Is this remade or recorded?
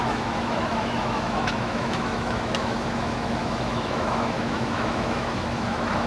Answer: remade